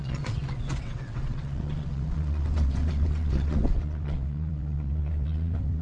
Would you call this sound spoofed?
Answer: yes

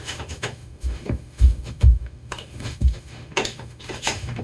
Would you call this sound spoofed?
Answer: yes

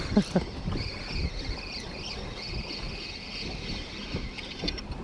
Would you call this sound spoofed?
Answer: no